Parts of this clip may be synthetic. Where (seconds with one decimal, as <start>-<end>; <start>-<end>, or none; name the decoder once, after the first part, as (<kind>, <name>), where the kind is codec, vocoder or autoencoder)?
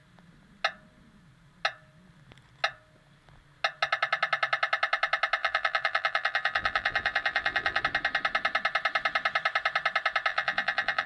5.4-7.8 (vocoder, BigVGAN v2); 10.3-11.1